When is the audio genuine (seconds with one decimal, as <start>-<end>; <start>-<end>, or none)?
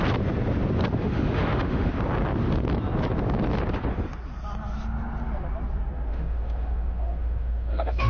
0.0-1.0; 1.9-6.1